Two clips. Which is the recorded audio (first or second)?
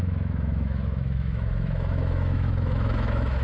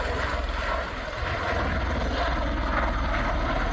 second